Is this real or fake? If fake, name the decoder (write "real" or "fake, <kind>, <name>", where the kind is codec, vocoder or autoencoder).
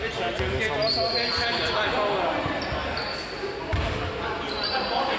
real